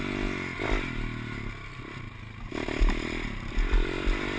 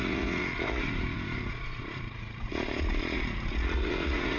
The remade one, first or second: second